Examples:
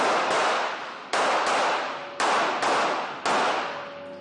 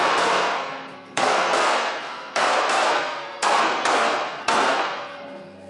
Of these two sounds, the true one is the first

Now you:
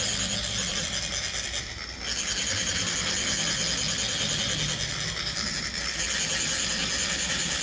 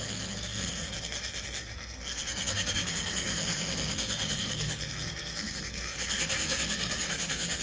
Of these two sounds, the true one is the first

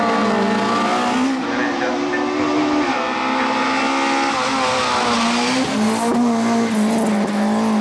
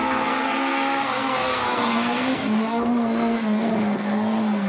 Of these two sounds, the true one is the first